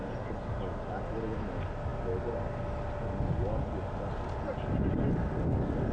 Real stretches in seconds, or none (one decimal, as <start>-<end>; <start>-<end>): 0.0-5.9